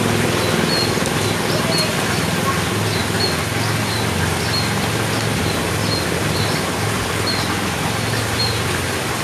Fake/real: real